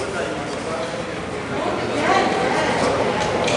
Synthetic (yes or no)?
no